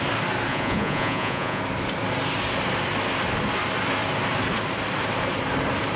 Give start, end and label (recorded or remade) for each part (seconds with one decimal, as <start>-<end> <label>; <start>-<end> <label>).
0.0-0.5 recorded; 0.5-1.6 remade; 1.6-6.0 recorded